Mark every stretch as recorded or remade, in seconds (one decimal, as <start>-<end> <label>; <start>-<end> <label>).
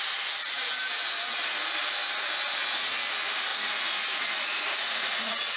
0.0-3.5 recorded; 3.5-5.6 remade